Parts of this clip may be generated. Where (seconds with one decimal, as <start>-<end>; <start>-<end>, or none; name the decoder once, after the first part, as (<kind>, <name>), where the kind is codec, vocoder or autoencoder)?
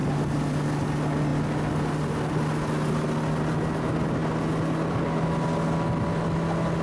none